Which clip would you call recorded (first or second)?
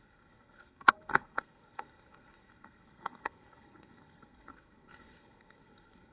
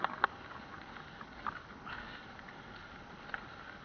second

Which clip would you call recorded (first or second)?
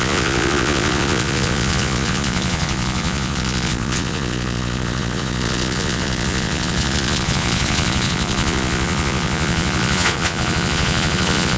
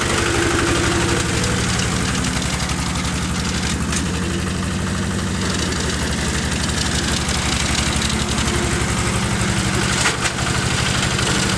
second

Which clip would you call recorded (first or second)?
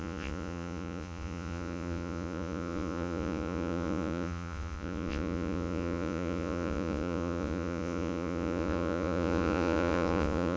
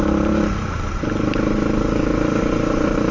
second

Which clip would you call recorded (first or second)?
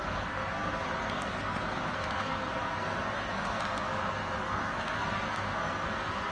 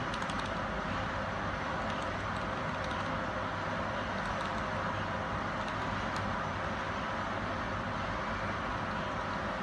second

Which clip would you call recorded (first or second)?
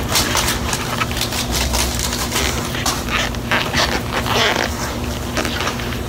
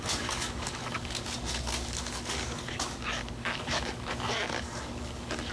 first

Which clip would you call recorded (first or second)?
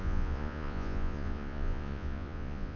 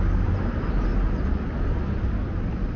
second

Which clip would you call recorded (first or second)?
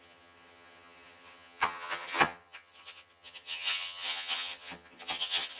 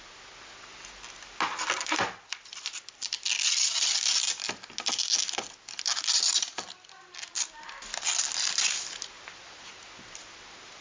second